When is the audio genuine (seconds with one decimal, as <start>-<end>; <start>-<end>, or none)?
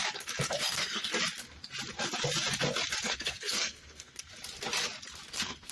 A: 0.0-0.6; 1.1-3.0; 4.3-5.3